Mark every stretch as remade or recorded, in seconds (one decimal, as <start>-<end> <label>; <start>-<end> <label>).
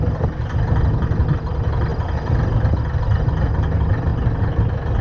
0.0-1.9 recorded; 1.9-2.7 remade; 2.7-5.0 recorded